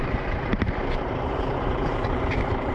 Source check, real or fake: fake